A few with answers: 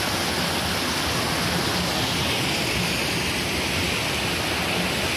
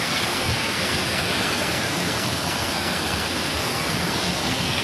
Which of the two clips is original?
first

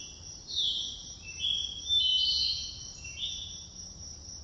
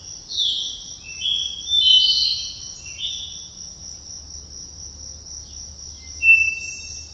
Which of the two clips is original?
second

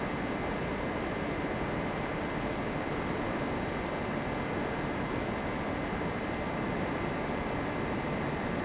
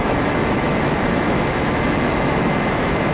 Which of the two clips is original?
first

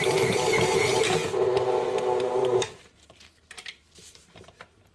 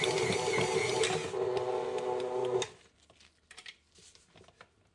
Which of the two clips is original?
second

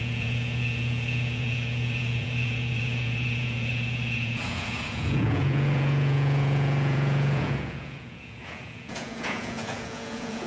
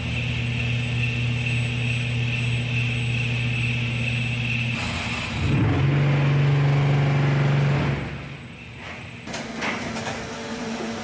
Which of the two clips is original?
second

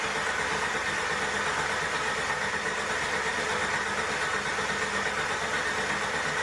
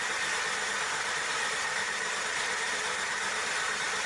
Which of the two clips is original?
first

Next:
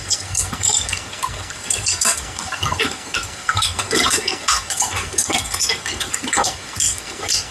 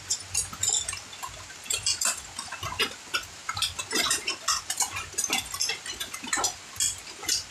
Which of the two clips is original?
second